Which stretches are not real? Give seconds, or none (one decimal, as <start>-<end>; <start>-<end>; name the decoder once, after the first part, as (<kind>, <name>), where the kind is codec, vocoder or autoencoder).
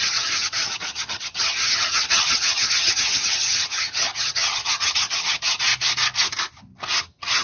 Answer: 0.0-5.7 (vocoder, HiFi-GAN); 7.0-7.4